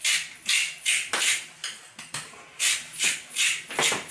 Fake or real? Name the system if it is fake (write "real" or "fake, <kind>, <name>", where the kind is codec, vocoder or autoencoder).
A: real